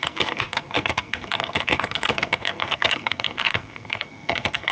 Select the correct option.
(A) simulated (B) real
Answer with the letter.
A